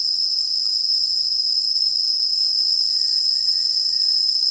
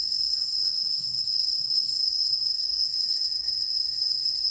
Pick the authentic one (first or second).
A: first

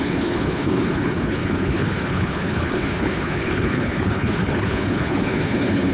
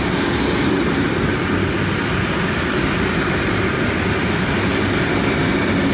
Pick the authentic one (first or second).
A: second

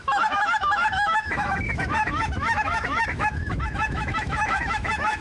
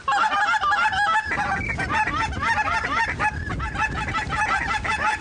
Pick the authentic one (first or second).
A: second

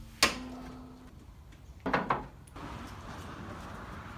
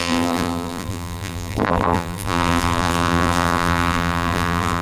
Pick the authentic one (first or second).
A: first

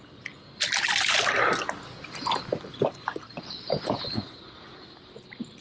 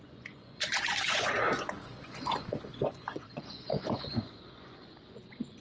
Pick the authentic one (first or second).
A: first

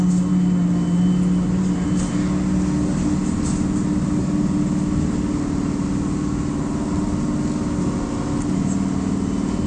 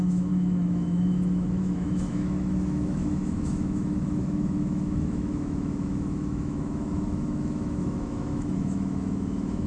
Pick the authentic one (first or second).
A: first